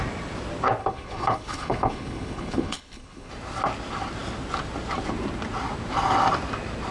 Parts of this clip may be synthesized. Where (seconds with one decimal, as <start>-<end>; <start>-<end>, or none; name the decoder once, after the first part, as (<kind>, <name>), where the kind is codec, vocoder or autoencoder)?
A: 0.8-3.3 (codec, HILCodec)